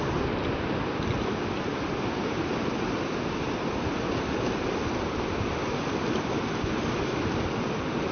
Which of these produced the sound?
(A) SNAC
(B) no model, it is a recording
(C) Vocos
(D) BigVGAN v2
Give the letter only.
B